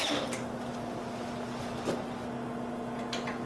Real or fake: real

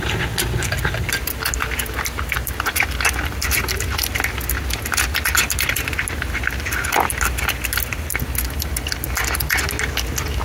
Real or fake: real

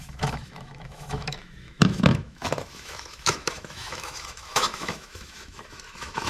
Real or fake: fake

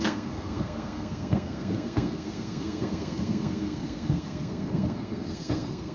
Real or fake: fake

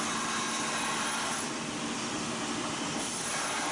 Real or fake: real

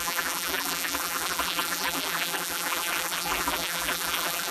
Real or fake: fake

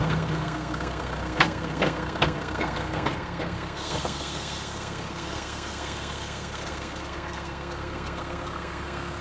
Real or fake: fake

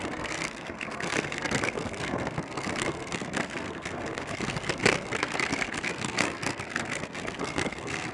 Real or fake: fake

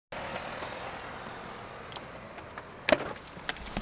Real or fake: real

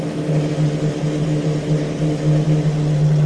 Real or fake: real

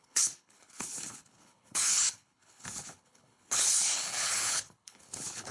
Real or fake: fake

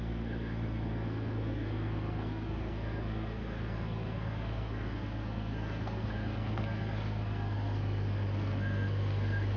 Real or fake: fake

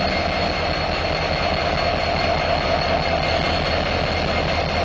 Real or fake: real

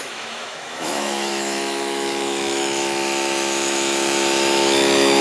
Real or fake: fake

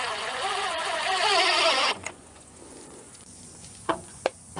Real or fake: fake